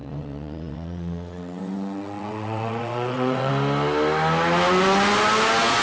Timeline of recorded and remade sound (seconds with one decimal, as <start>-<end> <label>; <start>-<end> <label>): 0.0-3.5 remade; 3.5-5.8 recorded